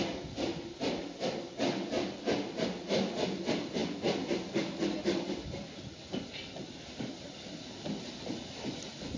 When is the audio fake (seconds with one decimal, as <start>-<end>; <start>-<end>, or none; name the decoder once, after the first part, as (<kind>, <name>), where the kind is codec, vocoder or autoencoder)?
none